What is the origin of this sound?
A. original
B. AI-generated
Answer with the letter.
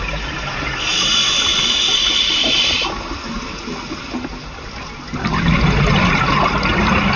A